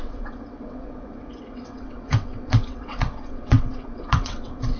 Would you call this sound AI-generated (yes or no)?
yes